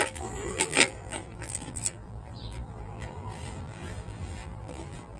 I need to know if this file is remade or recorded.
remade